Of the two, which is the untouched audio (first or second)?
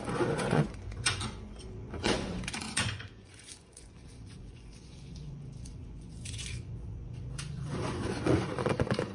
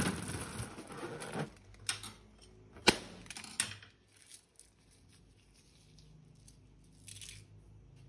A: second